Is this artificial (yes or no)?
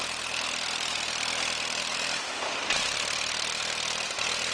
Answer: yes